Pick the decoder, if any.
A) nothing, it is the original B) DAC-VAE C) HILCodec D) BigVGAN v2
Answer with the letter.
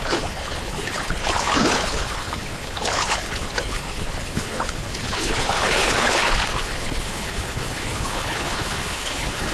C